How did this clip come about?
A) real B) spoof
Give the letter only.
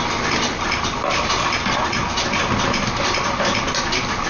A